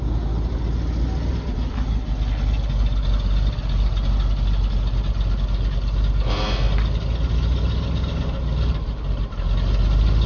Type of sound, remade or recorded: recorded